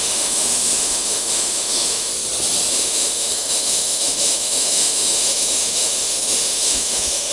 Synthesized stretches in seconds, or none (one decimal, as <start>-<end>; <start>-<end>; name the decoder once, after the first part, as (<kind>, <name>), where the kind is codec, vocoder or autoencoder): 0.0-2.1 (autoencoder, DAC-VAE); 2.7-7.3